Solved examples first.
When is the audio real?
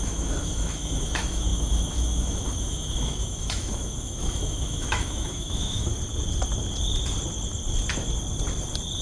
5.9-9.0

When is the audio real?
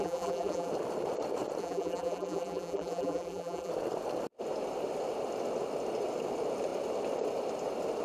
0.7-1.6; 3.7-8.0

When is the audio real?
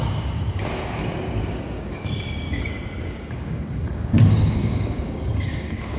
1.0-1.5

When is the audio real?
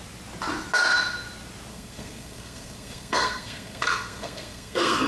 0.0-1.7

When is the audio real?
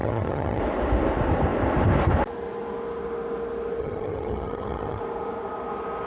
0.6-3.8; 5.0-6.1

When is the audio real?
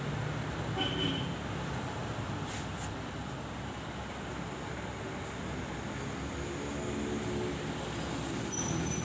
0.0-9.0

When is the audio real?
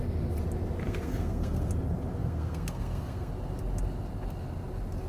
0.0-0.8; 1.7-2.2; 3.3-5.1